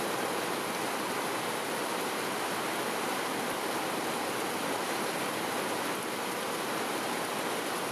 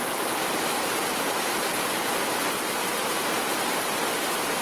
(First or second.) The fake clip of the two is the second